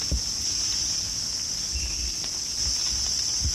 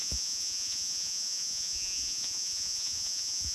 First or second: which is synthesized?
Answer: second